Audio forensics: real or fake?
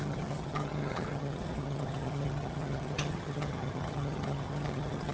fake